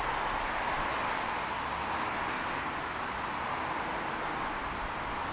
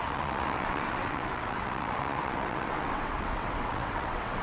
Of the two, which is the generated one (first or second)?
second